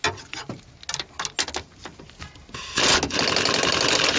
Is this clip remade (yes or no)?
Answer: no